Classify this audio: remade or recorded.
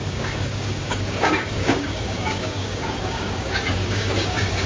remade